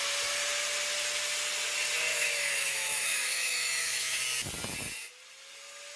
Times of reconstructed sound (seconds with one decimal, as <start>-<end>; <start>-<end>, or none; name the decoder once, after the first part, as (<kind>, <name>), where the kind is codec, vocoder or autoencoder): 2.1-4.2 (autoencoder, DAC-VAE)